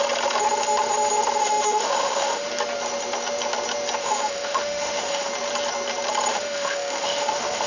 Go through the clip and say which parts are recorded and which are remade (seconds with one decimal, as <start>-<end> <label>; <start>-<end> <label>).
0.0-1.4 recorded; 1.4-2.5 remade; 2.5-4.0 recorded; 4.0-5.3 remade; 5.3-6.3 recorded; 6.3-7.7 remade